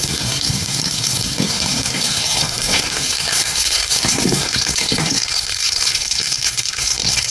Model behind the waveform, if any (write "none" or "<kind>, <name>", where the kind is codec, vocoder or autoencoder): codec, SNAC